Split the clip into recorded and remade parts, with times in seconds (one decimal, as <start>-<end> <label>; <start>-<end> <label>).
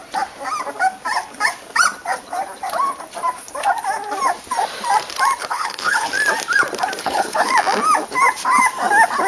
0.0-5.4 recorded; 5.4-6.1 remade; 6.1-7.0 recorded; 7.0-7.5 remade; 7.5-9.3 recorded